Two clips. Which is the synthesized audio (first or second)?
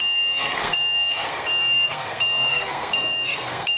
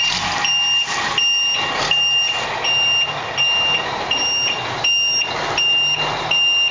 first